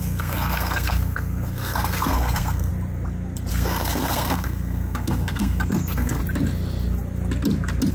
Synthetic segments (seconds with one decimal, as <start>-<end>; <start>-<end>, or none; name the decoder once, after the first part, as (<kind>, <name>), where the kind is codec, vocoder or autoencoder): 0.0-2.7 (codec, SNAC); 3.5-6.2